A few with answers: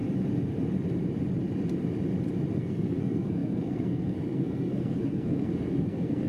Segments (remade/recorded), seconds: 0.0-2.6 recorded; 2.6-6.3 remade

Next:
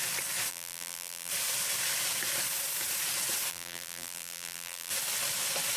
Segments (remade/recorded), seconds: 0.0-0.5 recorded; 0.5-1.3 remade; 1.3-3.5 recorded; 3.5-4.9 remade; 4.9-5.8 recorded

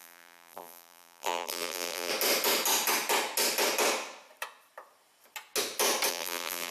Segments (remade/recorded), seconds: 0.0-2.1 remade; 2.1-6.1 recorded; 6.1-6.7 remade

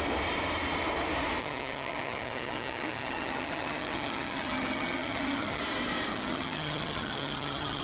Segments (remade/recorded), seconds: 0.0-1.4 recorded; 1.4-5.6 remade; 5.6-6.1 recorded; 6.1-7.8 remade

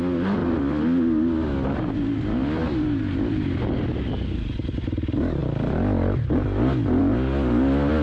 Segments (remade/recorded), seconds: 0.0-8.0 recorded

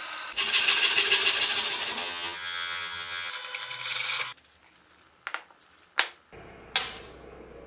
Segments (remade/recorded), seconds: 0.0-2.0 recorded; 2.0-3.3 remade; 3.3-7.7 recorded

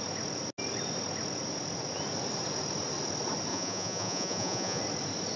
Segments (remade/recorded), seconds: 0.0-3.5 recorded; 3.5-4.8 remade; 4.8-5.4 recorded

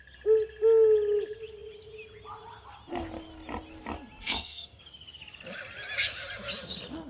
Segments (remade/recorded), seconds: 0.0-4.2 recorded; 4.2-4.8 remade; 4.8-7.1 recorded